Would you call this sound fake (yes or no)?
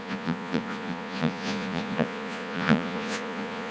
yes